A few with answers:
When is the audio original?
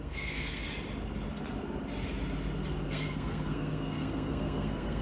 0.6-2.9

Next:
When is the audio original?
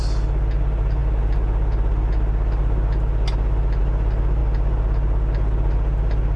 0.0-6.4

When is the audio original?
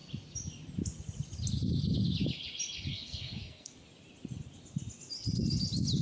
0.0-2.9; 3.7-6.0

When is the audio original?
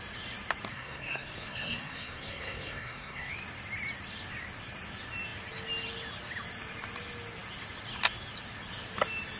0.0-0.7; 3.3-9.4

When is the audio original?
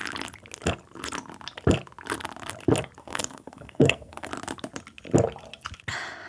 0.0-3.0; 4.3-6.3